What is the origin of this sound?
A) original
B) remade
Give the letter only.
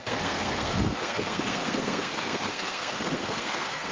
B